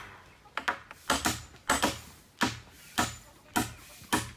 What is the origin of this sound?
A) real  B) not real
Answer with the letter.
A